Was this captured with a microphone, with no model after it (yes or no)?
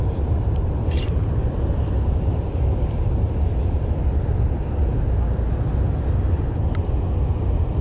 yes